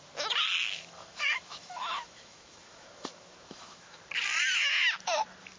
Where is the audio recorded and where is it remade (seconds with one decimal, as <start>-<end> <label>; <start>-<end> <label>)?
0.0-0.6 recorded; 0.6-4.0 remade; 4.0-5.6 recorded